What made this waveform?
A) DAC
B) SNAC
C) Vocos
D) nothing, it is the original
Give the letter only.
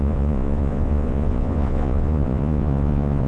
C